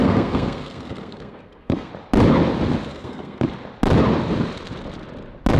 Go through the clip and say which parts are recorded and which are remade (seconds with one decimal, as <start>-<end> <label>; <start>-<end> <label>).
0.0-1.9 remade; 1.9-2.9 recorded; 2.9-3.5 remade; 3.5-5.6 recorded